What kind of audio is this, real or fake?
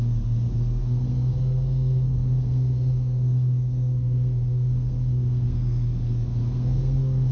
fake